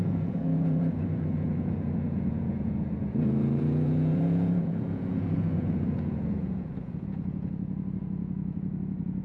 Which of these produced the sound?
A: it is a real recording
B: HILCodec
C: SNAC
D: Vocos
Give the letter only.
D